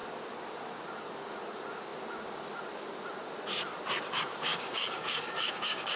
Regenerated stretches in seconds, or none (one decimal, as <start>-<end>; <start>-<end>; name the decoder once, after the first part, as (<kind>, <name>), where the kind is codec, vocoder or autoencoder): 4.5-6.0 (codec, DAC)